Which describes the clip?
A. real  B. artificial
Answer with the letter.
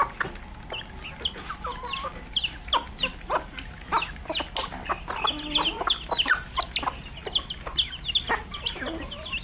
A